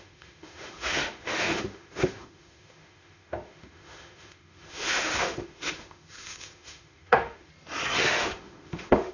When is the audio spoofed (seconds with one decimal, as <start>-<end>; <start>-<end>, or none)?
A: 0.0-7.5; 8.0-9.1